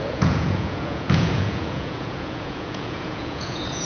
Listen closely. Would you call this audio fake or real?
fake